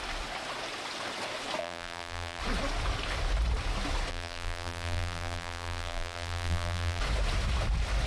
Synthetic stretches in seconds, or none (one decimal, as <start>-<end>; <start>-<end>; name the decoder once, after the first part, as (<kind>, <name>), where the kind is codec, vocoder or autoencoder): 1.6-2.4 (vocoder, BigVGAN v2); 4.1-7.0